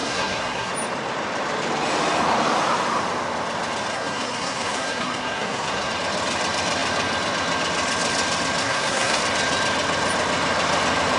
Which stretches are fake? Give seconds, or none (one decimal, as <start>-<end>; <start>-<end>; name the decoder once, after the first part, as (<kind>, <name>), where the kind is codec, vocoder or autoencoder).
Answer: 0.0-0.7 (codec, SNAC); 3.9-5.9; 8.6-9.2